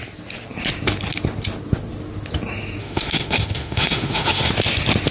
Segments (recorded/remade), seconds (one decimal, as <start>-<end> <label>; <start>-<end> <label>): 0.0-2.8 recorded; 2.8-4.5 remade; 4.5-5.1 recorded